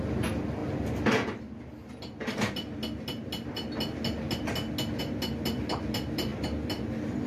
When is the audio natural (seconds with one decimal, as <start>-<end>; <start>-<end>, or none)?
0.0-7.3